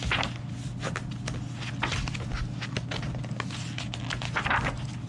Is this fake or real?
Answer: real